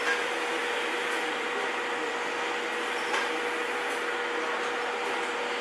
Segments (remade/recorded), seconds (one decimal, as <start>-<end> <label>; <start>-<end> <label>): 0.0-5.6 recorded